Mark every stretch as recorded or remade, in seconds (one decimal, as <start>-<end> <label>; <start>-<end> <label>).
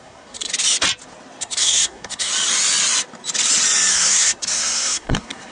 0.0-0.5 remade; 0.5-1.4 recorded; 1.4-2.3 remade; 2.3-3.9 recorded; 3.9-5.5 remade